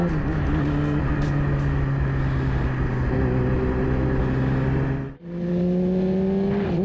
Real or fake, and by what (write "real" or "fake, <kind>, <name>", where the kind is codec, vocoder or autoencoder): real